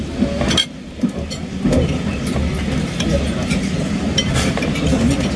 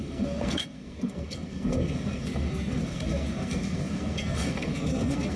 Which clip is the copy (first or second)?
second